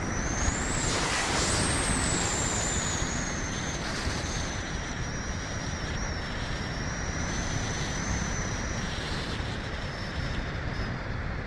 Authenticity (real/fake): fake